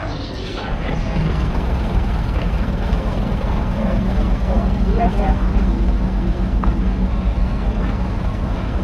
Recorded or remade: remade